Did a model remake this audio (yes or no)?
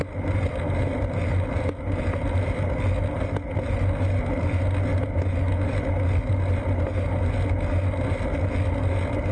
no